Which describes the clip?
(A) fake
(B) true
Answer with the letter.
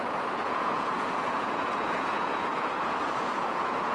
A